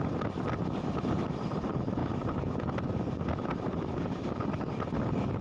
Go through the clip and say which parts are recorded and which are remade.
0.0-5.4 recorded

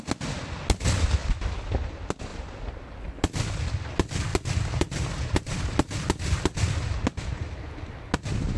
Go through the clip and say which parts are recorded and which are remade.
0.0-1.2 recorded; 1.2-1.8 remade; 1.8-4.3 recorded; 4.3-7.0 remade; 7.0-8.6 recorded

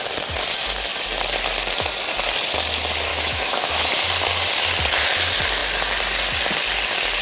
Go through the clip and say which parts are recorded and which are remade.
0.0-3.1 recorded; 3.1-3.9 remade; 3.9-7.2 recorded

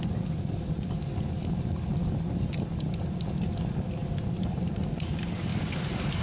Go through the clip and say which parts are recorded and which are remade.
0.0-5.5 recorded; 5.5-6.2 remade

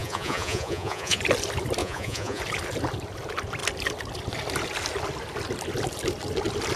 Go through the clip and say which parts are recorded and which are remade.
0.0-1.2 remade; 1.2-1.8 recorded; 1.8-2.4 remade; 2.4-6.8 recorded

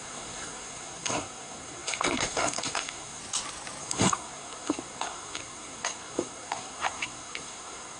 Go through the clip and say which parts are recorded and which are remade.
0.0-3.2 remade; 3.2-3.8 recorded; 3.8-8.0 remade

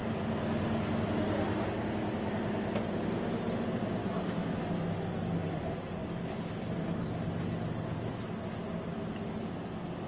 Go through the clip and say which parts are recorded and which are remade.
0.0-4.0 recorded; 4.0-4.7 remade; 4.7-10.1 recorded

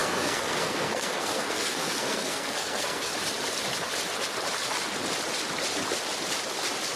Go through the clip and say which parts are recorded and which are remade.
0.0-3.1 remade; 3.1-7.0 recorded